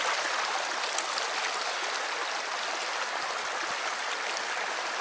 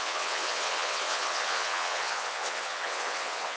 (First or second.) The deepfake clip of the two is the second